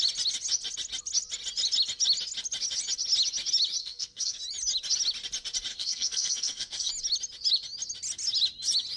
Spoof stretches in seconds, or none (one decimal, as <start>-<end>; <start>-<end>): 3.8-4.4; 5.7-6.9